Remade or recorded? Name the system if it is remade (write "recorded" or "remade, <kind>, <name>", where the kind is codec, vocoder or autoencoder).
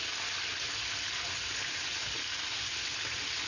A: recorded